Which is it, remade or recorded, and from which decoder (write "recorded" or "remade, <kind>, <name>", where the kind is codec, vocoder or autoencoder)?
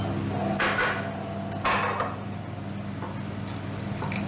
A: recorded